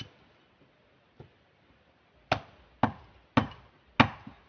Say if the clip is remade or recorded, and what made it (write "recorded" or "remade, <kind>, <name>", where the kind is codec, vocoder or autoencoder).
recorded